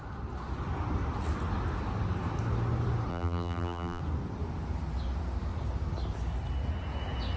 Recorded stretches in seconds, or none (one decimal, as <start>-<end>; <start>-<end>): 0.0-3.1; 4.0-7.4